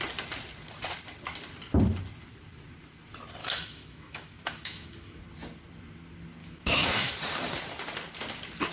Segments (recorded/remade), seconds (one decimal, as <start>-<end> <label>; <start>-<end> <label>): 0.0-3.4 recorded; 3.4-5.2 remade; 5.2-6.4 recorded; 6.4-7.1 remade; 7.1-8.7 recorded